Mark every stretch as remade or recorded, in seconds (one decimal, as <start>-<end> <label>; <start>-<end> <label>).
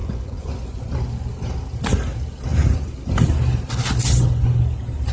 0.0-0.8 remade; 0.8-4.0 recorded; 4.0-4.5 remade; 4.5-5.1 recorded